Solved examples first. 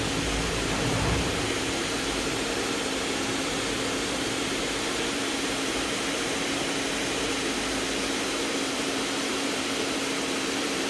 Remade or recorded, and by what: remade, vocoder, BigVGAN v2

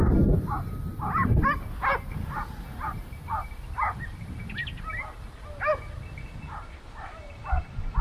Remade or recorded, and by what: recorded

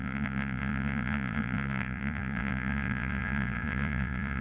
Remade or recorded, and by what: remade, vocoder, Vocos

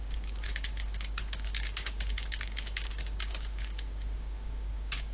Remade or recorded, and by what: remade, codec, DAC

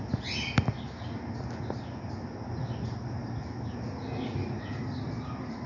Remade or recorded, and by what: recorded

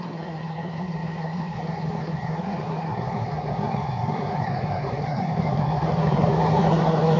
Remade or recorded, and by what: remade, codec, SNAC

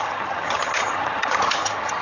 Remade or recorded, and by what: remade, vocoder, HiFi-GAN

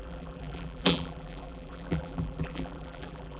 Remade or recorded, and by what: remade, vocoder, BigVGAN v2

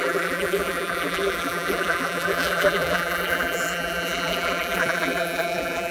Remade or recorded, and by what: remade, vocoder, BigVGAN v2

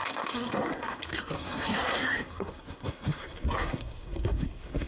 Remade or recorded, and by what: remade, codec, SNAC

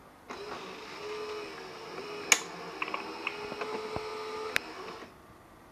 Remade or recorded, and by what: recorded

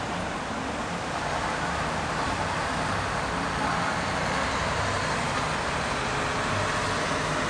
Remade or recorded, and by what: recorded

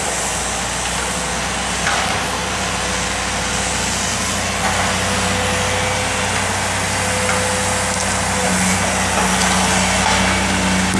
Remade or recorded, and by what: recorded